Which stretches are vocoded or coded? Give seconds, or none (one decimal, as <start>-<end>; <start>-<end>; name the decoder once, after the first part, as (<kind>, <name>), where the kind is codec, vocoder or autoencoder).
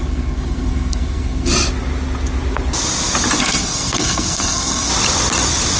0.0-1.5 (codec, SNAC); 3.4-4.9